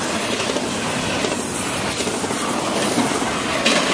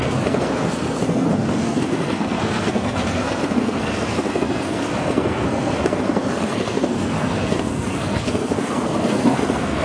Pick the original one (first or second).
first